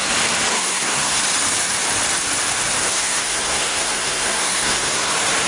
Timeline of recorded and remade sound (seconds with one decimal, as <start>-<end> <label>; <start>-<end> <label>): 0.0-0.5 recorded; 0.5-1.2 remade; 1.2-2.8 recorded; 2.8-5.1 remade; 5.1-5.5 recorded